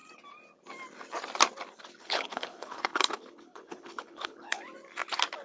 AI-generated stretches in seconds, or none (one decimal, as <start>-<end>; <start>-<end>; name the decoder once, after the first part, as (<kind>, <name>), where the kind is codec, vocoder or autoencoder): 2.0-4.6 (codec, HILCodec)